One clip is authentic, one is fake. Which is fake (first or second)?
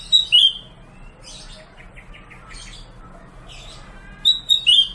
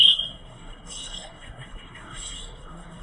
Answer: second